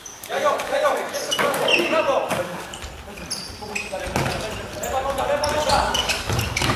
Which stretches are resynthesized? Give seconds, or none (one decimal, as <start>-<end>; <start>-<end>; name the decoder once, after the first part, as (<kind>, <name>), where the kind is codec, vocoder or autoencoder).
0.0-1.7 (codec, DAC); 2.3-2.7; 5.7-6.8